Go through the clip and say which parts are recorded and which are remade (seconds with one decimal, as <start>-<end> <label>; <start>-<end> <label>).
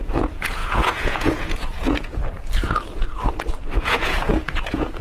0.0-2.2 remade; 2.2-3.8 recorded; 3.8-5.0 remade